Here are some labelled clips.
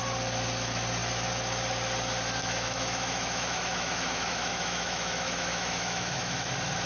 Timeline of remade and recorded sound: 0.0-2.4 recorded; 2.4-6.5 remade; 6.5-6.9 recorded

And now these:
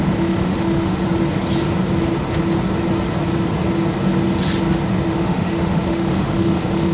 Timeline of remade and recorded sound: 0.0-1.0 remade; 1.0-5.1 recorded; 5.1-6.9 remade

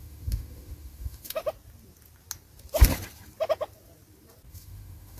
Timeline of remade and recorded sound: 0.0-1.4 remade; 1.4-4.5 recorded; 4.5-5.2 remade

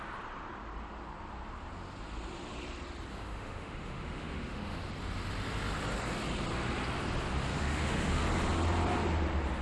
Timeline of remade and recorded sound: 0.0-3.1 recorded; 3.1-4.9 remade; 4.9-7.5 recorded; 7.5-8.2 remade; 8.2-9.6 recorded

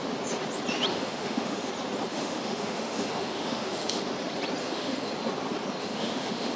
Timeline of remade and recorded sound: 0.0-0.9 recorded; 0.9-1.7 remade; 1.7-2.1 recorded; 2.1-4.0 remade; 4.0-4.6 recorded; 4.6-5.1 remade; 5.1-5.8 recorded; 5.8-6.6 remade

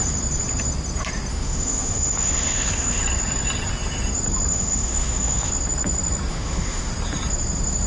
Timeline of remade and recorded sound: 0.0-1.3 recorded; 1.3-3.0 remade; 3.0-4.5 recorded; 4.5-5.5 remade; 5.5-6.3 recorded; 6.3-6.9 remade; 6.9-7.9 recorded

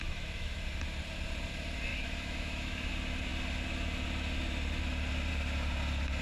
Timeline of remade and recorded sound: 0.0-0.6 remade; 0.6-1.9 recorded; 1.9-2.9 remade; 2.9-6.2 recorded

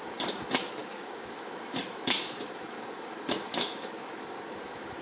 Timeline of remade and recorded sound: 0.0-5.0 remade